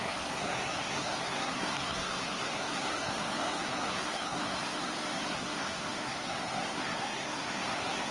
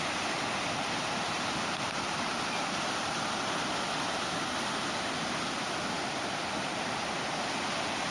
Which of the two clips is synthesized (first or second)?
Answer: first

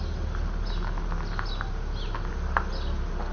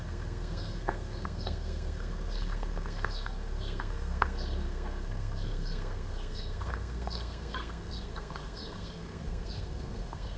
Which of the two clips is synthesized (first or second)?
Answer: second